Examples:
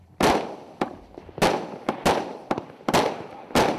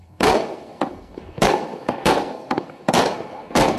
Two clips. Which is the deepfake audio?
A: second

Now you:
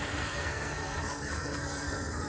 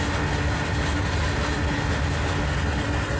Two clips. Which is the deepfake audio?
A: first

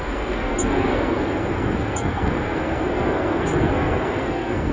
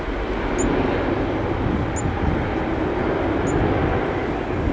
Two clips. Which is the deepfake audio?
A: first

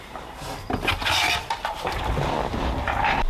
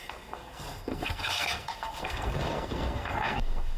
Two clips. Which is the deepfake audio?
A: second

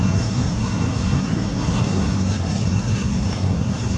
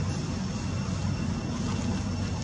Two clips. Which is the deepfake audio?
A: first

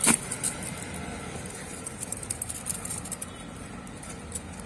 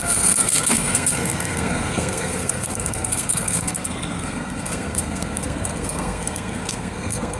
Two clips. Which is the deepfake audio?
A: second